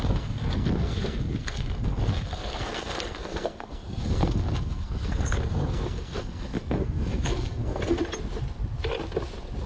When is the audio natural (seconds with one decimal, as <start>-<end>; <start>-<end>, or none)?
8.0-9.7